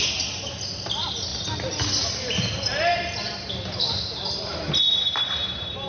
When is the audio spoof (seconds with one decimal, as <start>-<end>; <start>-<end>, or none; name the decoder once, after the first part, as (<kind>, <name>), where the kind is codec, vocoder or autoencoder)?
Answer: none